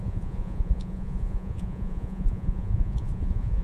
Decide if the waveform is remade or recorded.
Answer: remade